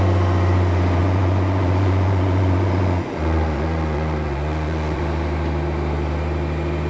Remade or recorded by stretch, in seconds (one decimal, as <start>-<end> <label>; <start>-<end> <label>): 0.0-1.0 recorded; 1.0-5.0 remade; 5.0-6.9 recorded

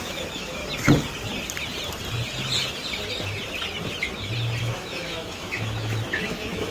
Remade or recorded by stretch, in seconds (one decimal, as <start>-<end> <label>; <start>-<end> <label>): 0.0-0.6 remade; 0.6-4.6 recorded; 4.6-6.7 remade

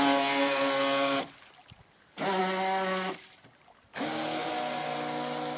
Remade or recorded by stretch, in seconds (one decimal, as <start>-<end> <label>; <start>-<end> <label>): 0.0-1.6 recorded; 1.6-2.4 remade; 2.4-3.9 recorded; 3.9-4.5 remade; 4.5-5.6 recorded

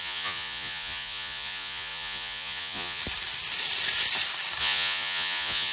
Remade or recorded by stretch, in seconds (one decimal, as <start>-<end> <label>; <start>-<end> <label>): 0.0-3.0 remade; 3.0-4.6 recorded; 4.6-5.7 remade

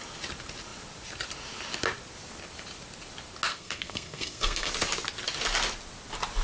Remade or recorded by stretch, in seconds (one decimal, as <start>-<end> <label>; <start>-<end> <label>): 0.0-3.5 recorded; 3.5-4.7 remade; 4.7-6.4 recorded

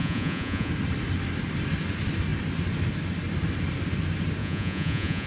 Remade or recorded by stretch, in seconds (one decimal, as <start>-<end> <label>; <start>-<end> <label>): 0.0-0.7 remade; 0.7-4.4 recorded; 4.4-5.3 remade

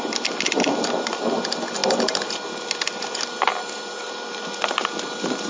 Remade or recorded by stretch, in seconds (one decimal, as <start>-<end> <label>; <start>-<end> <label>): 0.0-5.5 recorded